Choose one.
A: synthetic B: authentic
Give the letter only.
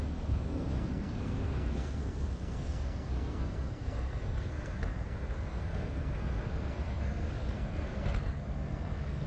A